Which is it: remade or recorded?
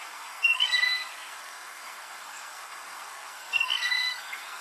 remade